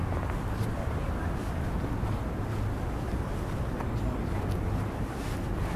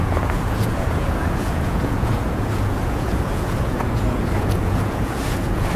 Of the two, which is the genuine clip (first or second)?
first